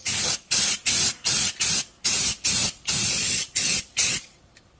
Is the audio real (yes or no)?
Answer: yes